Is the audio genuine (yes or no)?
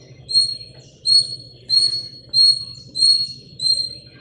yes